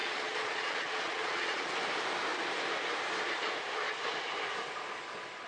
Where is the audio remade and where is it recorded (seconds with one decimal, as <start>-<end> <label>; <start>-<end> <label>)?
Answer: 0.0-1.7 remade; 1.7-5.5 recorded